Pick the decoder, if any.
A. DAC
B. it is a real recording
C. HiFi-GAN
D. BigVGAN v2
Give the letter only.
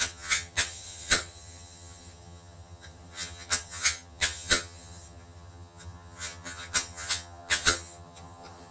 C